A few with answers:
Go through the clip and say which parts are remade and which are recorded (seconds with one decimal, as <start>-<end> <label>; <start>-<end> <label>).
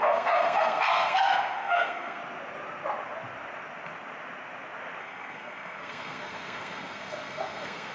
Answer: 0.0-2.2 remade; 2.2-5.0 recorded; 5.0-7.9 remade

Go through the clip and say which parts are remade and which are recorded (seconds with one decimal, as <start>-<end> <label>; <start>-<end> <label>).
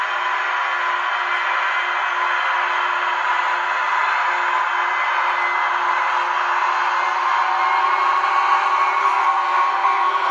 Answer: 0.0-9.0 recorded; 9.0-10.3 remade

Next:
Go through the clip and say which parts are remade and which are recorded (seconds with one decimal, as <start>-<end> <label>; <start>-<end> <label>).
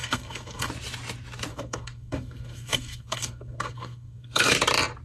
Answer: 0.0-0.7 remade; 0.7-1.5 recorded; 1.5-4.5 remade; 4.5-5.0 recorded